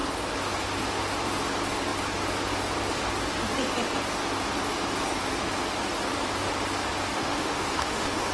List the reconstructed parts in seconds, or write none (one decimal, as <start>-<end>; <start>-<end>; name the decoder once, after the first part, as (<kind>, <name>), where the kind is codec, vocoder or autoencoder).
7.1-8.3 (autoencoder, DAC-VAE)